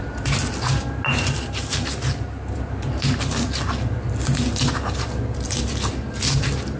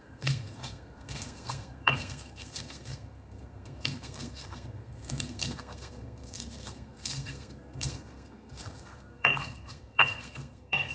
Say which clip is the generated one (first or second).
second